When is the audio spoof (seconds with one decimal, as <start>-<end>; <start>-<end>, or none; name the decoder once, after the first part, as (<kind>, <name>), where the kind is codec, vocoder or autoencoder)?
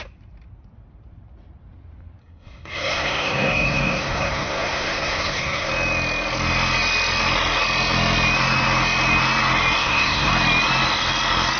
2.2-5.7 (codec, SNAC); 9.8-10.3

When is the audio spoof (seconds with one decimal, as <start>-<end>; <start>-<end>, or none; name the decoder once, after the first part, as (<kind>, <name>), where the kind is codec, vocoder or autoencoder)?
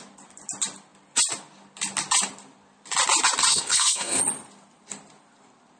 3.5-4.2 (codec, SNAC)